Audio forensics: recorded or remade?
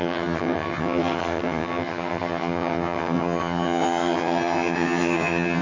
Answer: remade